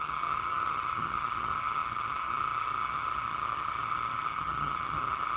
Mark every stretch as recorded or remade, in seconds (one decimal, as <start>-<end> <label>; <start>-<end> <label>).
0.0-5.4 remade